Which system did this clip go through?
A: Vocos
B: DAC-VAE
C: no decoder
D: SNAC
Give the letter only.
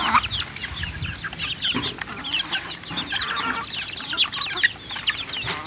C